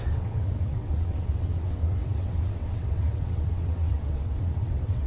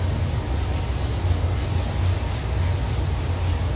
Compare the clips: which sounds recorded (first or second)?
second